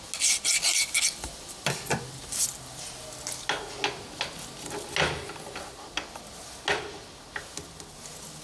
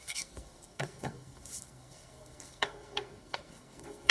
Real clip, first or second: first